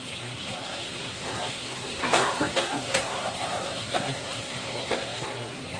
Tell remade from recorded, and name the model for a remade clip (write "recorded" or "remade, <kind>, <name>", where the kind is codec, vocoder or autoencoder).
remade, codec, SNAC